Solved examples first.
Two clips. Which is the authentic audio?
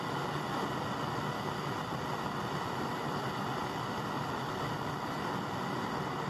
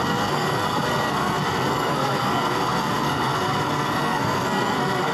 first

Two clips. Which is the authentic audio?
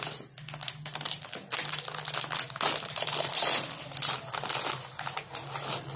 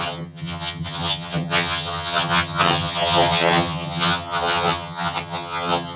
first